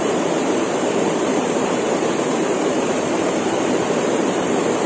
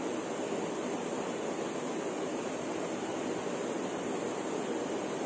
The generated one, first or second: first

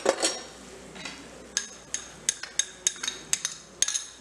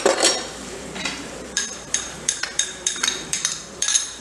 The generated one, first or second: second